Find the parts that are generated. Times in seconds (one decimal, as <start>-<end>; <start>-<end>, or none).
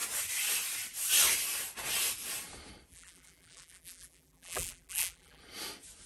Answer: 2.9-5.4